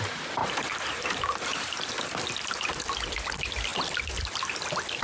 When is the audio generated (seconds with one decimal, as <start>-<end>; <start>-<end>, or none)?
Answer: 0.4-1.9